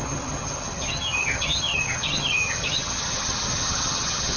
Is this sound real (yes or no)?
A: no